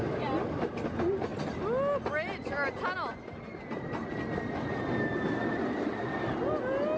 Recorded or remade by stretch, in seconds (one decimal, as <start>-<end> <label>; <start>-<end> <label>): 0.0-7.0 recorded